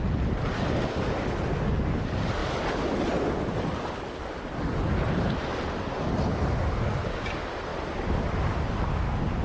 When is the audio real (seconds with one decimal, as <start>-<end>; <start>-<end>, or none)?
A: 0.0-9.4